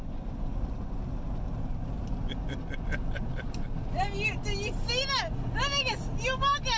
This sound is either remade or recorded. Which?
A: recorded